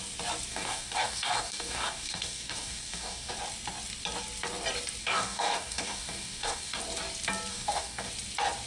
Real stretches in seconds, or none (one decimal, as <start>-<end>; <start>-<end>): 0.0-0.5; 3.3-5.0; 6.8-7.5; 8.1-8.7